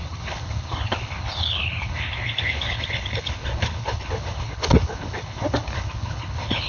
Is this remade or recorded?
remade